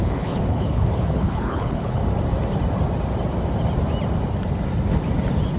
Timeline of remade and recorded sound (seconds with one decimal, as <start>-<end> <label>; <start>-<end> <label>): 0.0-2.0 remade; 2.0-5.6 recorded